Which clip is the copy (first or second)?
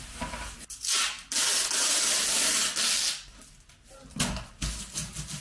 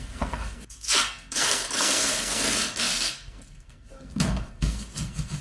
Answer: second